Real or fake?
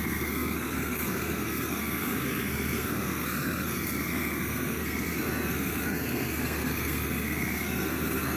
fake